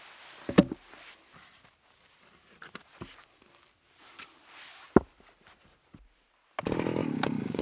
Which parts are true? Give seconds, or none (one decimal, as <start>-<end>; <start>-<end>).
0.0-7.0